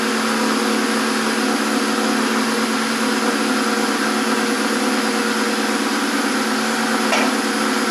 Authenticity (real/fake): real